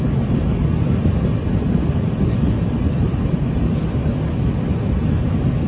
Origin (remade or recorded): recorded